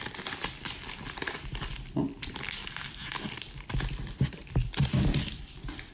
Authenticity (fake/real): fake